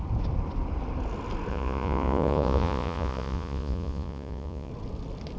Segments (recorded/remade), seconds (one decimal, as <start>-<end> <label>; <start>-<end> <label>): 0.0-1.5 recorded; 1.5-4.7 remade; 4.7-5.4 recorded